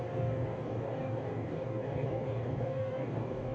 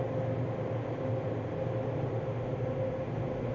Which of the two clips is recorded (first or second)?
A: second